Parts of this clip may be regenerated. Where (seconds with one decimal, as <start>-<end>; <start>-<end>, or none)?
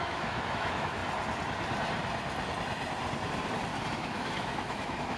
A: 0.0-1.0; 3.9-5.2